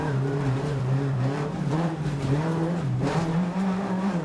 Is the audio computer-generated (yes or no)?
yes